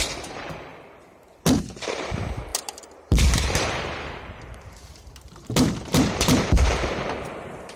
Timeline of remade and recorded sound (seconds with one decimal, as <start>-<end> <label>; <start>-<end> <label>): 0.0-0.7 remade; 0.7-1.6 recorded; 1.6-7.8 remade